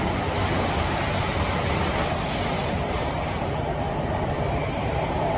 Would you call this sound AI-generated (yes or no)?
no